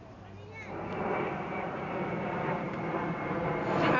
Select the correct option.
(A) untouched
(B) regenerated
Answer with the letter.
A